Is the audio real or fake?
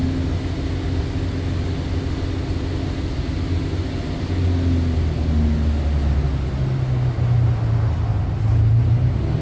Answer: real